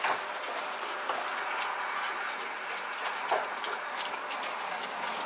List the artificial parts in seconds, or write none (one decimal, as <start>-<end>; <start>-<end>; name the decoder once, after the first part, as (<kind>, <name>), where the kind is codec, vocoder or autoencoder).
1.4-3.9 (vocoder, Vocos)